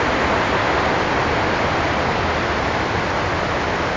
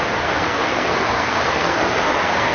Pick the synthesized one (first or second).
second